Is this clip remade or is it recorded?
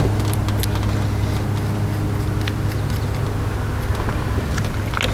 recorded